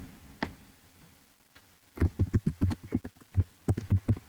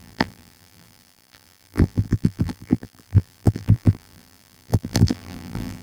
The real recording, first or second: first